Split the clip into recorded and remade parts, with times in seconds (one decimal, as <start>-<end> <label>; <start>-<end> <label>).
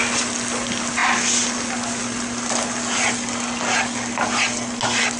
0.0-5.2 recorded